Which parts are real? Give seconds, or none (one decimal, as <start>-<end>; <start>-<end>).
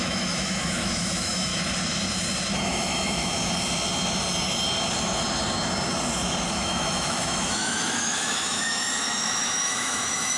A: 1.5-2.6; 3.3-6.5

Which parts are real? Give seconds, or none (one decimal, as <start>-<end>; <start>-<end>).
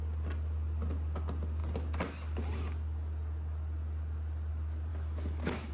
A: 0.0-4.9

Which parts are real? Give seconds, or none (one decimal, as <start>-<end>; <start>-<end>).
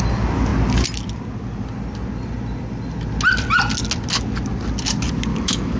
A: 0.0-5.3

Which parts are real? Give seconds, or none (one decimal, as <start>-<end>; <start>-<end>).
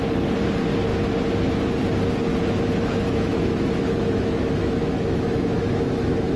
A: 0.0-2.3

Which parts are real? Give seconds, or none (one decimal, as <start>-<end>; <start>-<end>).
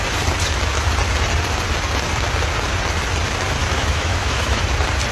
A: 0.0-3.6; 4.6-5.1